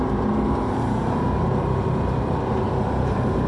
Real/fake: fake